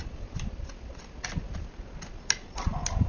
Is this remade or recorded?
recorded